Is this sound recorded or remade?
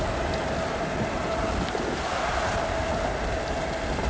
recorded